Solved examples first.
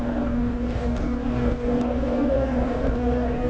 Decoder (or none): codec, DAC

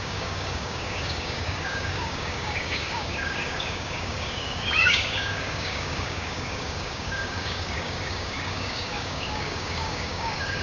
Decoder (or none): codec, DAC